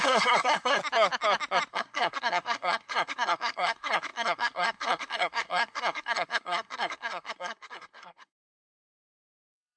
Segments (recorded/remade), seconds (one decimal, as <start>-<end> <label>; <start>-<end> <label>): 0.0-0.8 remade; 0.8-1.7 recorded; 1.7-9.8 remade